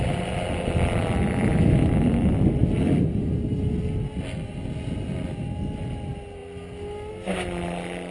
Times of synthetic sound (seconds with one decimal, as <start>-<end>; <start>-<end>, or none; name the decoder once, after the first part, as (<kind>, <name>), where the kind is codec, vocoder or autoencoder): none

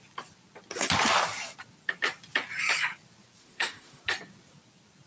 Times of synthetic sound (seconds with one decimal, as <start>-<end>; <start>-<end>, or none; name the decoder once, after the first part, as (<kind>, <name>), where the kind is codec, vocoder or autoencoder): 3.4-4.0 (autoencoder, DAC-VAE)

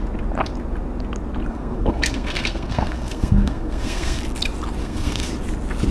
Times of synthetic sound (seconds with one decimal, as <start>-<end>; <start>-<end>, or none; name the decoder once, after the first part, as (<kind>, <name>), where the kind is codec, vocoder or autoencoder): 1.5-4.2 (codec, SNAC); 4.8-5.3